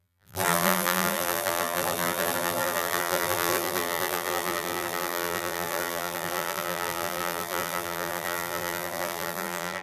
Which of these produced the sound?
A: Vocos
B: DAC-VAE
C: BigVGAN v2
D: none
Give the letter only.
C